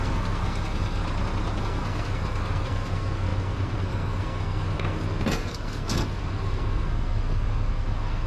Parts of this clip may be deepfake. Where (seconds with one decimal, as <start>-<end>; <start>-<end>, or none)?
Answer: 0.0-1.0; 1.6-8.3